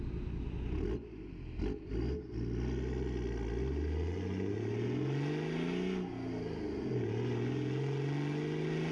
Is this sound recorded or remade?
recorded